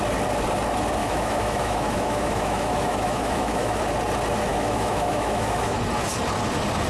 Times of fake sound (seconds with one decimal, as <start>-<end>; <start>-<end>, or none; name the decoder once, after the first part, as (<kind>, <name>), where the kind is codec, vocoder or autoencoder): 1.0-3.8 (autoencoder, DAC-VAE); 4.5-5.8